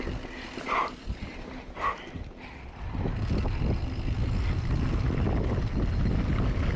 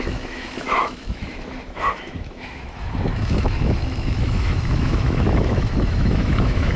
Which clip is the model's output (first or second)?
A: second